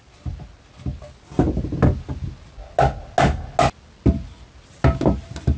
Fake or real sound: real